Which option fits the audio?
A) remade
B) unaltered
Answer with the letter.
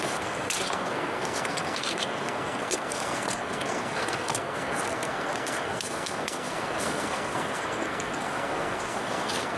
A